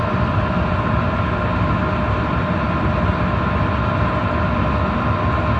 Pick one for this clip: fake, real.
real